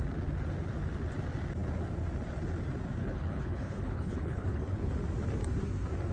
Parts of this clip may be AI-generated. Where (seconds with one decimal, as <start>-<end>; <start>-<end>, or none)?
3.0-4.9